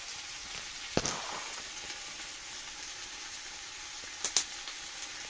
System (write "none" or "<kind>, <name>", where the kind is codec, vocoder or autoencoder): none